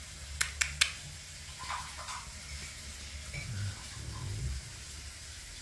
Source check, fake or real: real